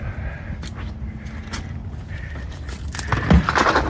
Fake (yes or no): no